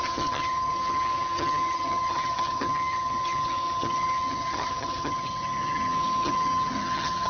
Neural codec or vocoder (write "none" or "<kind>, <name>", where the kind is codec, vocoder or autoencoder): vocoder, HiFi-GAN